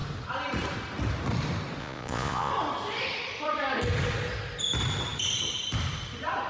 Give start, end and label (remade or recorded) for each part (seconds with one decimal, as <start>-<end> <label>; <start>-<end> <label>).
0.0-1.8 recorded; 1.8-2.5 remade; 2.5-6.5 recorded